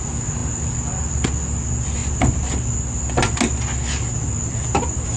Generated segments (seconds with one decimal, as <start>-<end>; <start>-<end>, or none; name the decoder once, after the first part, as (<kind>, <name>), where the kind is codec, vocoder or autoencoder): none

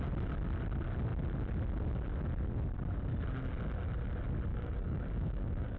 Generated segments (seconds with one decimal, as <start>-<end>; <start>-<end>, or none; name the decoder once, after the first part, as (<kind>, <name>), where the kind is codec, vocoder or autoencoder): 4.5-5.8 (codec, DAC)

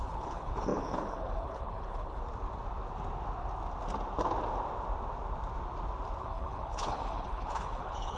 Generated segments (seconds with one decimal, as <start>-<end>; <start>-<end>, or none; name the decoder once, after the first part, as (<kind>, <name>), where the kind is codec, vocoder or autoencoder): 0.0-2.2 (codec, HILCodec); 6.2-8.2